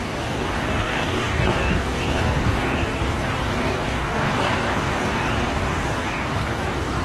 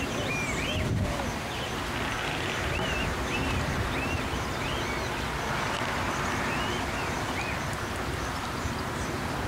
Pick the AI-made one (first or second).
first